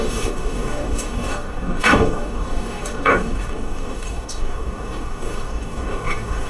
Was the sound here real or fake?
fake